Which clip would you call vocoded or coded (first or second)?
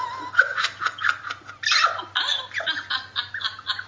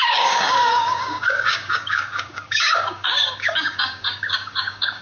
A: second